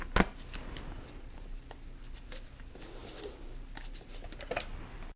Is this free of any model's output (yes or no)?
yes